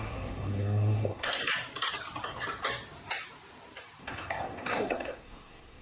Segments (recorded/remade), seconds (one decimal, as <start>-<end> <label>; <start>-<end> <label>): 0.0-1.4 remade; 1.4-4.0 recorded; 4.0-5.8 remade